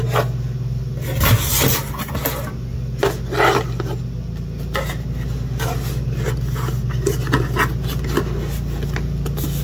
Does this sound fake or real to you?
real